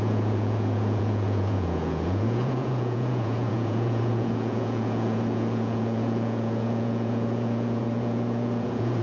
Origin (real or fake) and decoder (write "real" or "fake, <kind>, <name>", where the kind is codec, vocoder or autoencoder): fake, vocoder, Vocos